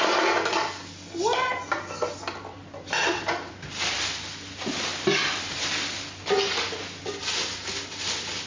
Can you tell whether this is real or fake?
real